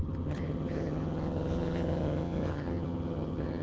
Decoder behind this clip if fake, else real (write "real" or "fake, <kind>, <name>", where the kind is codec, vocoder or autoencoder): fake, vocoder, HiFi-GAN